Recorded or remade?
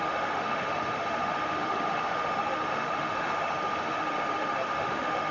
remade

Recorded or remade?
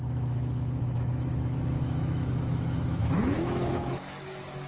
remade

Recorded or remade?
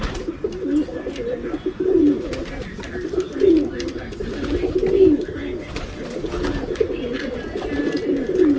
recorded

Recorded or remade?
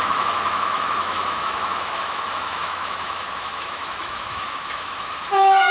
remade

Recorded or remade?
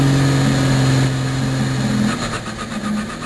recorded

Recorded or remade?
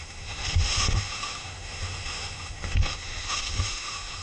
remade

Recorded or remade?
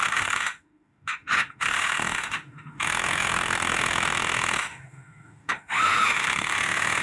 remade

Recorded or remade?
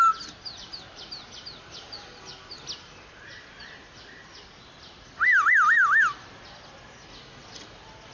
recorded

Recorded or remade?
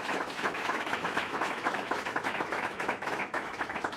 remade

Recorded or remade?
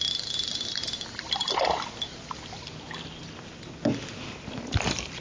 recorded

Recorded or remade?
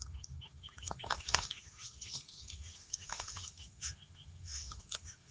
remade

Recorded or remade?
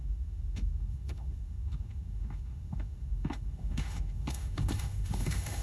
remade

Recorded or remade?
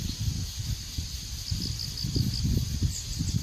recorded